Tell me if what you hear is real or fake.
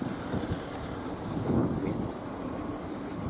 real